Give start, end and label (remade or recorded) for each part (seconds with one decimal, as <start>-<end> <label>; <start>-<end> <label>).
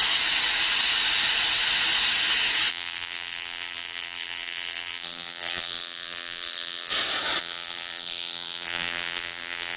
0.0-2.7 recorded; 2.7-6.9 remade; 6.9-7.4 recorded; 7.4-9.8 remade